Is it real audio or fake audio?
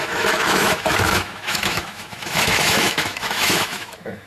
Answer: fake